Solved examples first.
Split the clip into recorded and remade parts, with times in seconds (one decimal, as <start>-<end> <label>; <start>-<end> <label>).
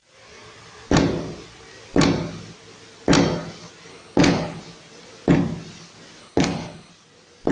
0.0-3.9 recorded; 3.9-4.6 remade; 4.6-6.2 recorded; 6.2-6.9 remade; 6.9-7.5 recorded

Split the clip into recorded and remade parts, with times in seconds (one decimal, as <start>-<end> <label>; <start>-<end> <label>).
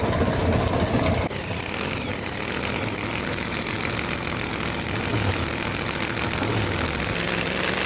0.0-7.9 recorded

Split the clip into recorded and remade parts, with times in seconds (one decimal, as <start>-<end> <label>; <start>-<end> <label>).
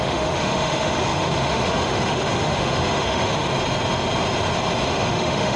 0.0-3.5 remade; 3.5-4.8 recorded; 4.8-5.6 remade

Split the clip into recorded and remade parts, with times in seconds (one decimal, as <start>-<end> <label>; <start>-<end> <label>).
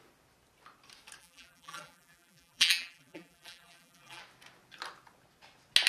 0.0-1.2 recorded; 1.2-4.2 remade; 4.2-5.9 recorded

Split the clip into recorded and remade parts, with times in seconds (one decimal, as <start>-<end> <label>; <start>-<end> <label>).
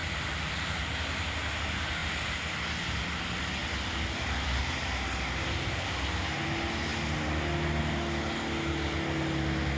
0.0-0.7 remade; 0.7-2.0 recorded; 2.0-3.2 remade; 3.2-3.6 recorded; 3.6-4.6 remade; 4.6-9.8 recorded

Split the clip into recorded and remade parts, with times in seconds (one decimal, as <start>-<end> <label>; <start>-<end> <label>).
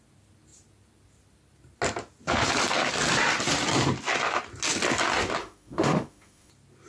0.0-5.4 recorded; 5.4-6.5 remade; 6.5-6.9 recorded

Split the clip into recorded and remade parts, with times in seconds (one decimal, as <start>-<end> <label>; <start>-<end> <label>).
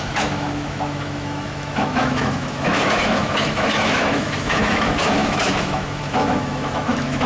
0.0-7.3 remade